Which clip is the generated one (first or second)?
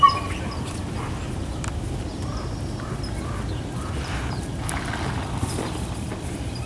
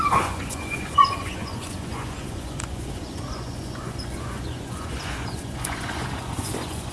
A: second